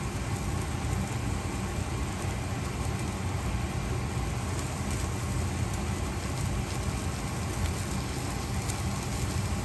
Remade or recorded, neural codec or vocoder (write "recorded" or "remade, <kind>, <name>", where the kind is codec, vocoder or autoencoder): recorded